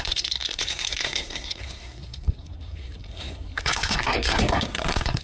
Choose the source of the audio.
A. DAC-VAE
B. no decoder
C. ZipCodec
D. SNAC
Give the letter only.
D